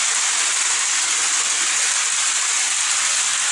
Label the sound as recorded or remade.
recorded